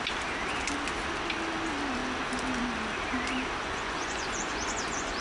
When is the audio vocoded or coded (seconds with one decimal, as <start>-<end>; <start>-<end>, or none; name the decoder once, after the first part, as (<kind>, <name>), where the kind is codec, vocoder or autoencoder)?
3.6-5.2 (vocoder, Vocos)